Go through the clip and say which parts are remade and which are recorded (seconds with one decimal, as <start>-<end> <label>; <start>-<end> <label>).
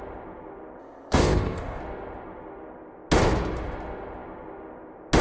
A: 0.0-0.8 recorded; 0.8-1.8 remade; 1.8-5.2 recorded